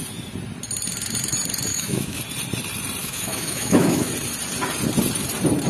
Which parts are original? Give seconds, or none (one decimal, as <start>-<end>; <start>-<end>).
0.0-1.7; 2.2-3.0; 4.1-5.7